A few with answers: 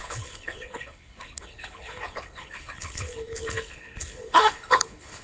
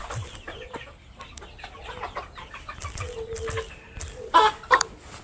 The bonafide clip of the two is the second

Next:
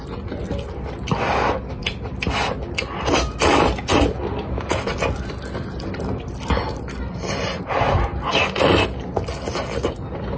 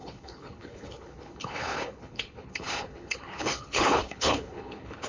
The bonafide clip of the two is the first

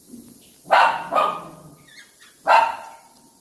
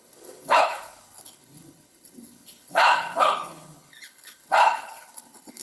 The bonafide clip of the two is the first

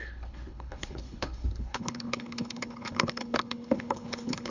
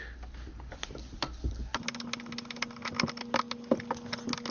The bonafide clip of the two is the second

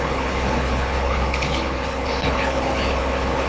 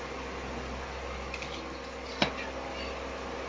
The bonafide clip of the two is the second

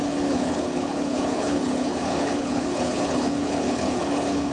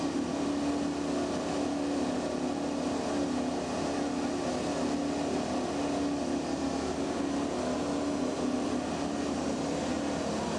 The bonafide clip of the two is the second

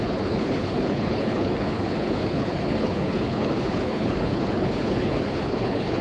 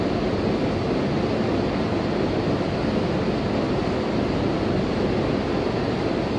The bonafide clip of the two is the second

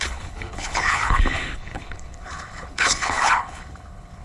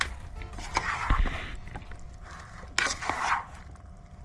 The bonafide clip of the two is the second